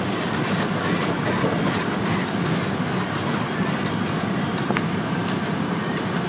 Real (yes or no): yes